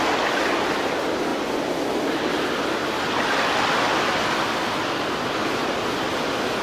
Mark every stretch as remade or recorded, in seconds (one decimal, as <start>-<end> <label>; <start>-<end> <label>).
0.0-6.6 recorded